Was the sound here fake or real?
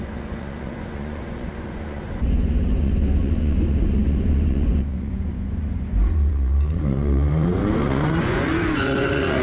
fake